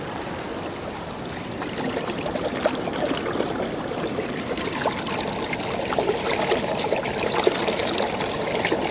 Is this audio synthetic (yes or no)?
no